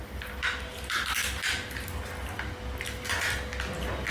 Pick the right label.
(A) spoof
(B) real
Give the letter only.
B